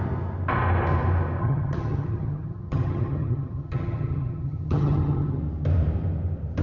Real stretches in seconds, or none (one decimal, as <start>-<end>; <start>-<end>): 0.0-1.4; 5.4-6.6